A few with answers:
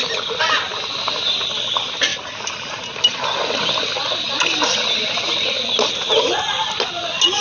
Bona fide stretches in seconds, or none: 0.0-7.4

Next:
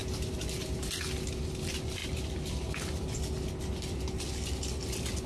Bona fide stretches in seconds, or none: 0.0-5.3

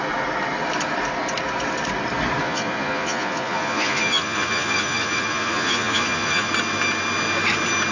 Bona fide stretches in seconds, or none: 0.0-2.4; 6.5-7.9

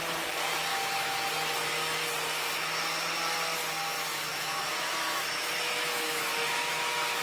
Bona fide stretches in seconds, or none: 0.0-0.7; 1.3-4.1

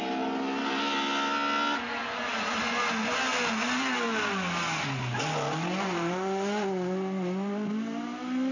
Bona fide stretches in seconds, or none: 0.0-8.5

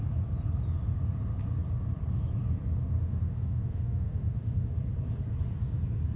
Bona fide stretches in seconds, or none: 0.0-2.8; 4.7-6.2

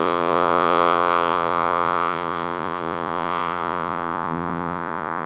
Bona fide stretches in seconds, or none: none

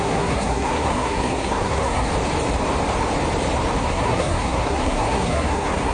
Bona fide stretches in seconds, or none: 2.1-3.8